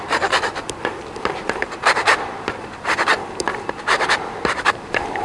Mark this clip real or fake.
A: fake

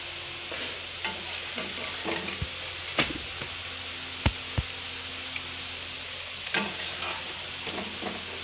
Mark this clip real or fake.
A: real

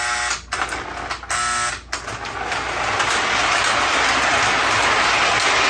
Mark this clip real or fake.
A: real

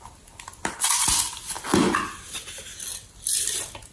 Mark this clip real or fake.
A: real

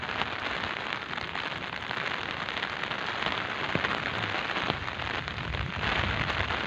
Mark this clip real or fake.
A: real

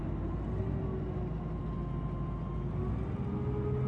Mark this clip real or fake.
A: real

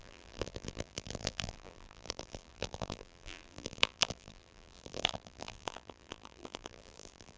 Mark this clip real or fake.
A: fake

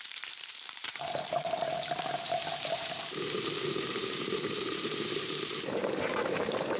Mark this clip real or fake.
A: fake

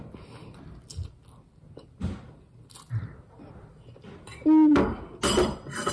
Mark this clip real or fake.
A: real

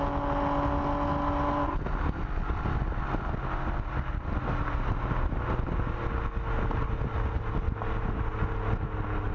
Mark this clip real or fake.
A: real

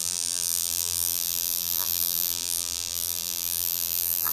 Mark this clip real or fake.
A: fake